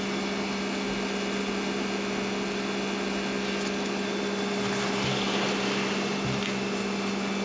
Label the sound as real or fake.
real